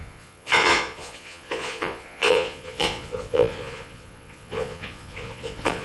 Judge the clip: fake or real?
fake